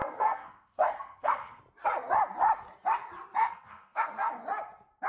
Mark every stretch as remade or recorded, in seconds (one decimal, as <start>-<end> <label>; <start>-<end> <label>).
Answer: 0.0-1.6 remade; 1.6-3.4 recorded; 3.4-4.3 remade; 4.3-5.1 recorded